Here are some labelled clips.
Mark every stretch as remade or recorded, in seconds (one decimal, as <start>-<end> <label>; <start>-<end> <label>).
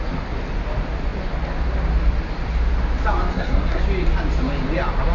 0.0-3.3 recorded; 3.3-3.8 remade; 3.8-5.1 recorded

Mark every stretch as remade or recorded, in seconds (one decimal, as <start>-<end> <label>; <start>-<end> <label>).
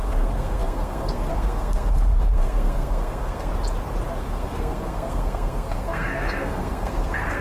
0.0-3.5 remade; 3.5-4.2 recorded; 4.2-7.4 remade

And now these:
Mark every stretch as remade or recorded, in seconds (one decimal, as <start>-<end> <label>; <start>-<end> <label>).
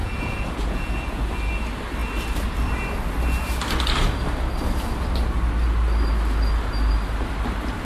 0.0-1.2 remade; 1.2-7.8 recorded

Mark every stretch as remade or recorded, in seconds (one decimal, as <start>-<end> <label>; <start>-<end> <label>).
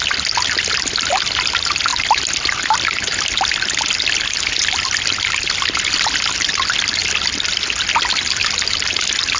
0.0-9.4 recorded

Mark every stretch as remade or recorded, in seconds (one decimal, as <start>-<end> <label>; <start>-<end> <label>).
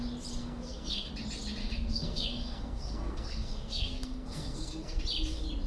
0.0-0.4 recorded; 0.4-1.1 remade; 1.1-1.6 recorded; 1.6-5.0 remade; 5.0-5.7 recorded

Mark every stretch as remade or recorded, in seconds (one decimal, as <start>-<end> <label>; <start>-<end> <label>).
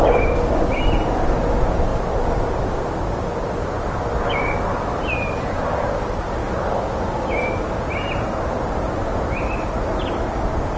0.0-10.8 recorded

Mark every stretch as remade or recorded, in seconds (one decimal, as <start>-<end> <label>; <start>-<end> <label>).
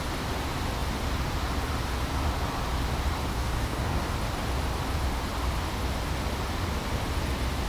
0.0-3.3 recorded; 3.3-4.0 remade; 4.0-7.7 recorded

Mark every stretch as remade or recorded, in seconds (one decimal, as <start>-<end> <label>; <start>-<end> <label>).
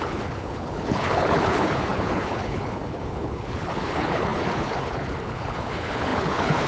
0.0-6.7 remade